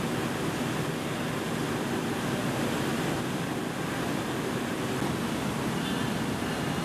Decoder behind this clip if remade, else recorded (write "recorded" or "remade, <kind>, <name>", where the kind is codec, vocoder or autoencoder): recorded